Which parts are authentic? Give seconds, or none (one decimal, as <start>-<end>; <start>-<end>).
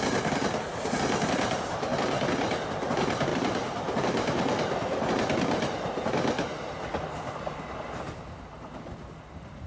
0.0-1.9; 2.6-3.3; 5.1-9.7